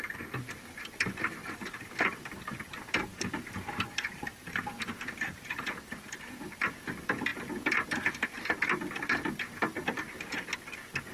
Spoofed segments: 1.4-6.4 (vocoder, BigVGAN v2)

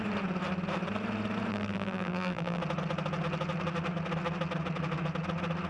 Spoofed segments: 1.5-2.6 (vocoder, BigVGAN v2)

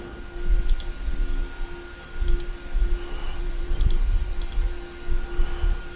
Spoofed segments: 3.2-4.3 (vocoder, BigVGAN v2)

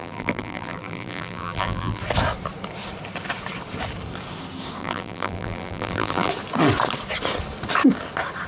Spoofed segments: 0.0-2.0 (vocoder, BigVGAN v2); 4.8-6.3

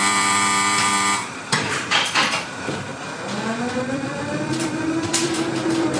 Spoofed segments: 0.0-2.9 (vocoder, BigVGAN v2); 3.9-6.0

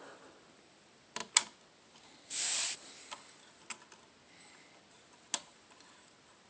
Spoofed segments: none

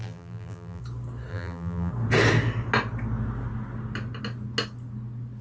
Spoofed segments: 0.0-0.8 (vocoder, BigVGAN v2); 1.3-1.9

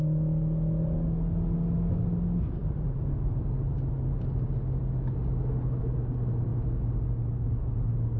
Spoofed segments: 2.6-4.5 (vocoder, BigVGAN v2)